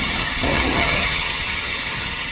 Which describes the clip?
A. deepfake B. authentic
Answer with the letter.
A